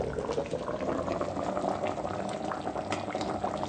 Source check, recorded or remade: recorded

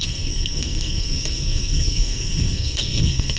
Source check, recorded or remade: remade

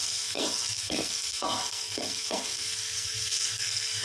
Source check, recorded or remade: remade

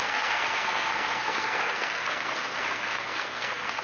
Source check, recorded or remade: remade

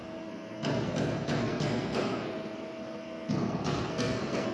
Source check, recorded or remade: remade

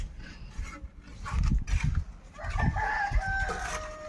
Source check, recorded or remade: recorded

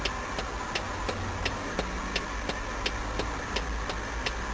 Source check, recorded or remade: recorded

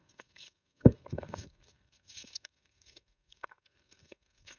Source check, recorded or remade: remade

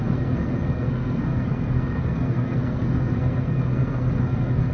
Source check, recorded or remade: remade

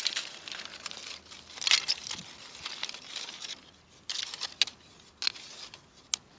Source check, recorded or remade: recorded